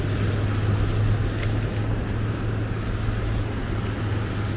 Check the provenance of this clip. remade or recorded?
recorded